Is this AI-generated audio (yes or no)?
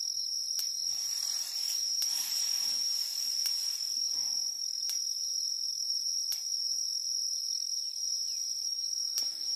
yes